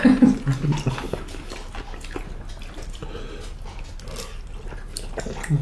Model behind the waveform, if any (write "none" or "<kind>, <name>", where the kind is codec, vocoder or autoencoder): none